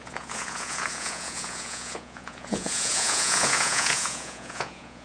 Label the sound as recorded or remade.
remade